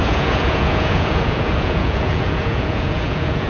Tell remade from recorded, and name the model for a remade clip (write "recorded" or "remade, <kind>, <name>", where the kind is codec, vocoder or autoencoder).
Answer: remade, vocoder, Vocos